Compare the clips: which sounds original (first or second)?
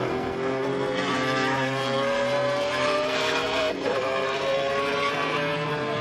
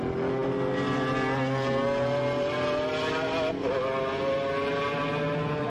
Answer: second